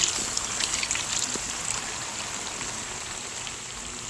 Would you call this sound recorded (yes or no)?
yes